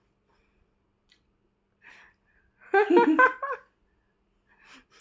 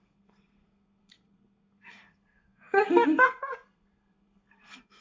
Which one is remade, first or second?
second